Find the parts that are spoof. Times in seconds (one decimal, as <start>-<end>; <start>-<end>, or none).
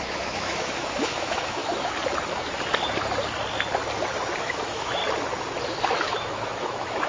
0.0-1.6; 4.4-5.0; 6.0-7.1